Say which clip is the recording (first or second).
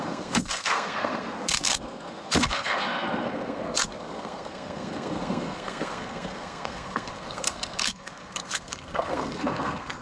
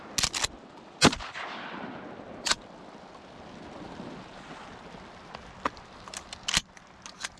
second